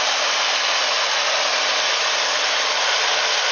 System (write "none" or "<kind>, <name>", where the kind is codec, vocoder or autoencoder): none